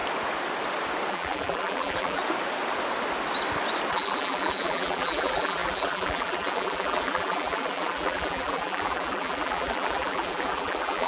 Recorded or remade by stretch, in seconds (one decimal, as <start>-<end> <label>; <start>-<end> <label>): 0.0-1.1 recorded; 1.1-2.2 remade; 2.2-3.9 recorded; 3.9-11.1 remade